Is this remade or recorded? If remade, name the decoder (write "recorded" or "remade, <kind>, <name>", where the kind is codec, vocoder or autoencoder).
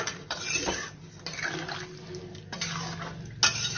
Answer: recorded